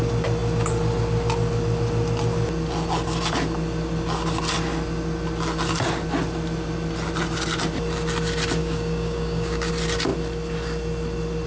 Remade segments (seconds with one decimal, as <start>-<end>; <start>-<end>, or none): 8.6-9.7